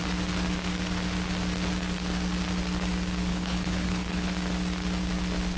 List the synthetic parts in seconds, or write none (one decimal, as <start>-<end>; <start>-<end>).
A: 3.3-4.3